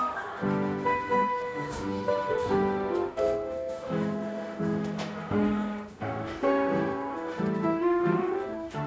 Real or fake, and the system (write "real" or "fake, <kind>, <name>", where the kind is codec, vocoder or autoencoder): fake, autoencoder, DAC-VAE